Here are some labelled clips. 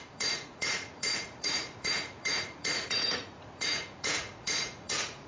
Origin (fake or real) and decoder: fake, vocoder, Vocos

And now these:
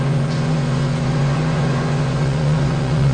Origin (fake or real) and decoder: fake, vocoder, Vocos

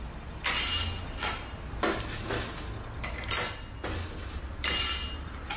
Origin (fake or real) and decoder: real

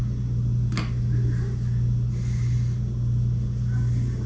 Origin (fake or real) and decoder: real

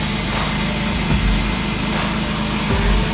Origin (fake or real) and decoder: real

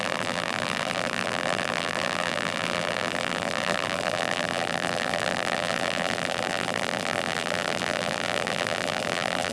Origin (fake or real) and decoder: fake, vocoder, BigVGAN v2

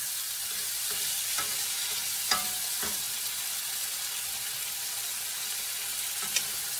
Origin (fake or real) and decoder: real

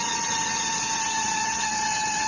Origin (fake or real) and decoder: fake, vocoder, WaveNeXt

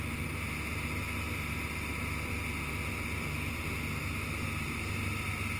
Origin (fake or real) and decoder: real